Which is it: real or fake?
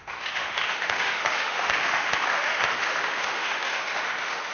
fake